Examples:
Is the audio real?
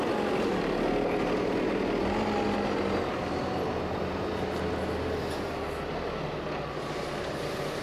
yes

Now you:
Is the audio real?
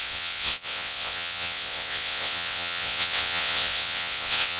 no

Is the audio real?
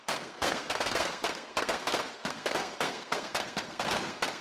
no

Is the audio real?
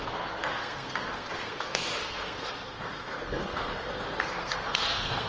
no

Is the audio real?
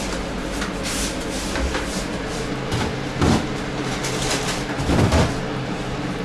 yes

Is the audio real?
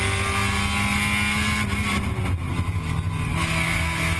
yes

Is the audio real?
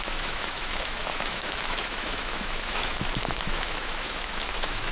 no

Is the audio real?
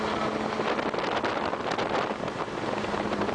yes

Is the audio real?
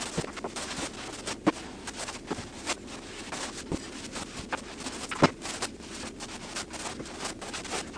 yes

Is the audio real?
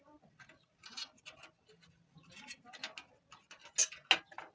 yes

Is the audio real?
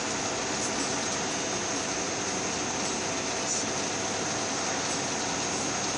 yes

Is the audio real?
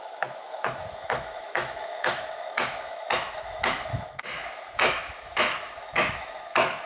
no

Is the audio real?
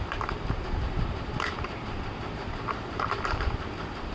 no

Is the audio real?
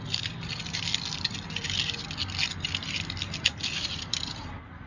yes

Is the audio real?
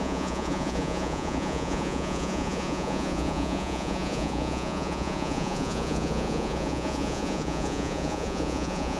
no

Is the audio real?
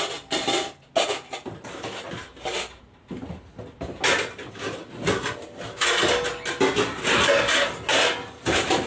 yes